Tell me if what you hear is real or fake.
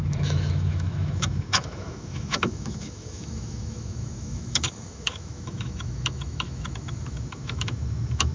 fake